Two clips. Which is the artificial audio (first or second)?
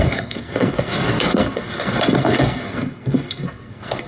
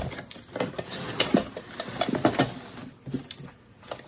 first